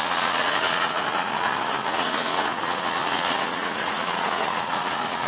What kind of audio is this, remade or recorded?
remade